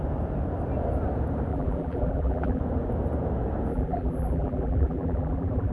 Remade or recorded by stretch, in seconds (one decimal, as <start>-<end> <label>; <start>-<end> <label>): 0.0-1.5 recorded; 1.5-2.6 remade; 2.6-3.7 recorded; 3.7-5.7 remade